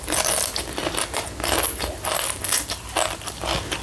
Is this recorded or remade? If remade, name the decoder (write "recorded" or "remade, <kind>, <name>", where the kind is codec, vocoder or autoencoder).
recorded